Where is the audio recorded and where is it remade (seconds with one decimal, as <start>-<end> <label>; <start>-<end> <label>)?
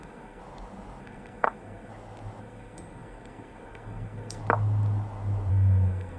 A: 0.0-0.4 remade; 0.4-1.0 recorded; 1.0-1.9 remade; 1.9-2.4 recorded; 2.4-4.4 remade; 4.4-5.5 recorded; 5.5-6.2 remade